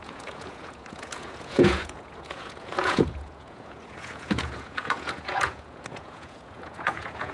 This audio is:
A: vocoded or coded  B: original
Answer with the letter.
A